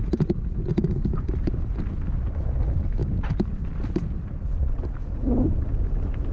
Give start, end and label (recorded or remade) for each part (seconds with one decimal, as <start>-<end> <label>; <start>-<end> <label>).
0.0-0.7 recorded; 0.7-1.8 remade; 1.8-3.0 recorded; 3.0-3.9 remade; 3.9-6.3 recorded